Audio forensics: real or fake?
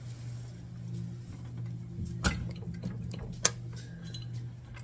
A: real